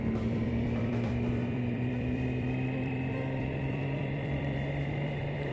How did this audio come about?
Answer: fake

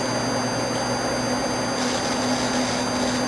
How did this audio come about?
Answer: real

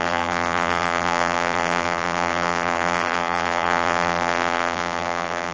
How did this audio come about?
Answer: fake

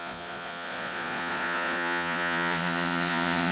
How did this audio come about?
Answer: fake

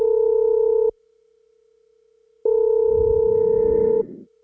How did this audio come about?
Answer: real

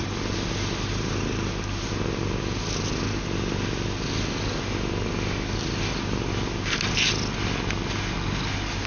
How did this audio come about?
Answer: real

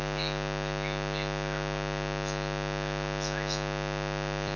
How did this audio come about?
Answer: real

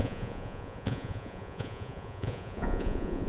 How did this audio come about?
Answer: fake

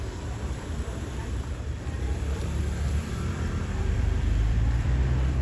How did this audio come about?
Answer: fake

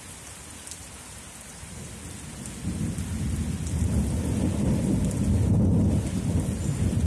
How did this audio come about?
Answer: real